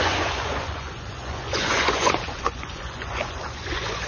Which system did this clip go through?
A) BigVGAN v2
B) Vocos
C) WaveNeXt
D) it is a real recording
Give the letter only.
B